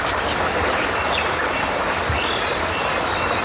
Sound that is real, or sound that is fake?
real